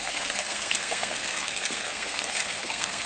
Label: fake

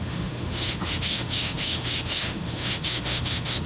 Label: fake